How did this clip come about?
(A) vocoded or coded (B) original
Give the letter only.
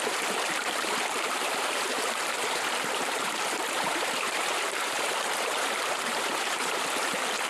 A